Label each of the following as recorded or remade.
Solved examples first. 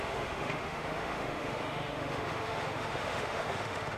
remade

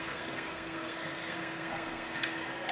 remade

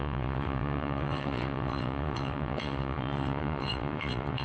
remade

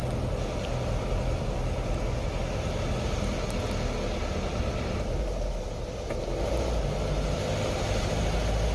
recorded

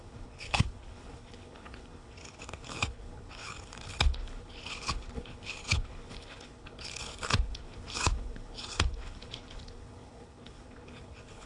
remade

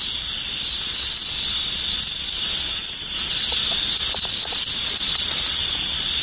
recorded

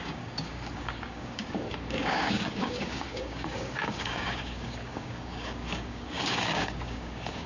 remade